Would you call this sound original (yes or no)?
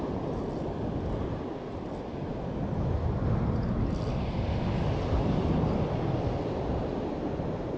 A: yes